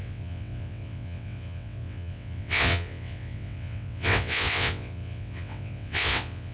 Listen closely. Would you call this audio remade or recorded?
remade